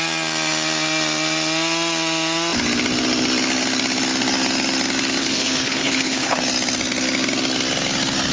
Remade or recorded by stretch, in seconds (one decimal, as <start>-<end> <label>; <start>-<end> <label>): 0.0-5.2 recorded; 5.2-6.4 remade; 6.4-8.3 recorded